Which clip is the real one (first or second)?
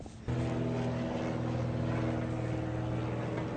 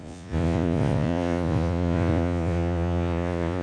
first